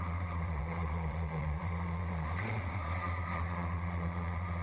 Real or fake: fake